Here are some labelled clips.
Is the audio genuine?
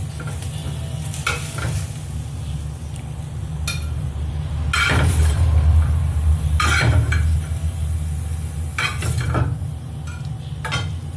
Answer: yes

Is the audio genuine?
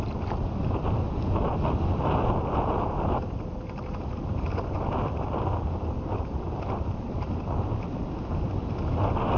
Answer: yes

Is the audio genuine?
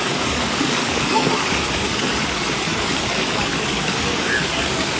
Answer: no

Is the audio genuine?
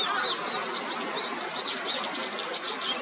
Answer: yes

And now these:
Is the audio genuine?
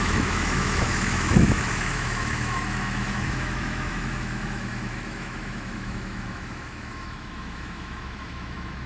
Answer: no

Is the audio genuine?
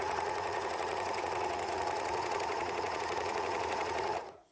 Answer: no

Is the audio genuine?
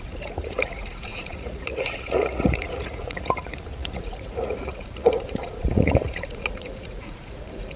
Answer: no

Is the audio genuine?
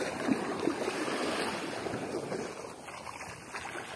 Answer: yes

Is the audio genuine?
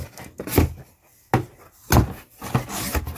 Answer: yes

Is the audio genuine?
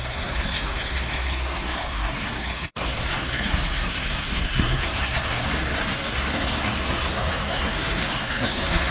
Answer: no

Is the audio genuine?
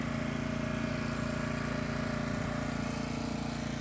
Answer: yes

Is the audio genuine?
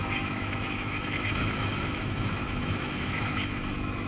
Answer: no